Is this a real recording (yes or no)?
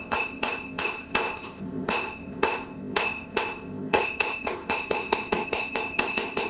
no